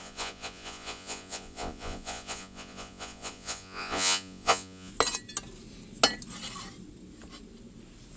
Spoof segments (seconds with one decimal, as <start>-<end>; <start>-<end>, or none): 0.0-4.9